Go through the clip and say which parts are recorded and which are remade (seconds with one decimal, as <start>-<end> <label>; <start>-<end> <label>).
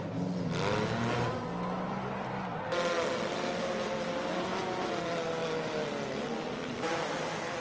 0.0-7.6 recorded